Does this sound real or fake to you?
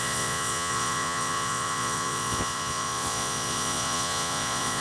fake